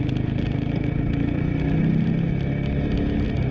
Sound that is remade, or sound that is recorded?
recorded